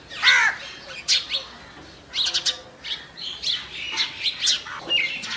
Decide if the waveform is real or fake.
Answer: real